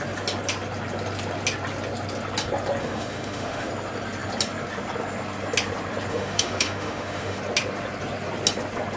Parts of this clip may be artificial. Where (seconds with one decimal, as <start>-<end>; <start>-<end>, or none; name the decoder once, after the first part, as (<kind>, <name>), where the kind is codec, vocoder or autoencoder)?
2.8-3.7 (autoencoder, DAC-VAE); 6.1-7.4